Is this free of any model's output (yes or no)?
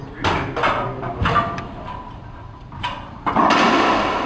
no